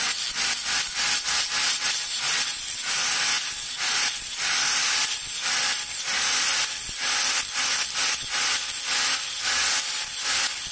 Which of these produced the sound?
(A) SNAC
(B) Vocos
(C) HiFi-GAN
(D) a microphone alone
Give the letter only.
D